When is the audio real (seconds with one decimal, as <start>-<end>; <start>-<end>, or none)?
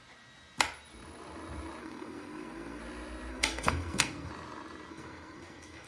0.0-1.8; 2.8-3.3; 4.3-4.9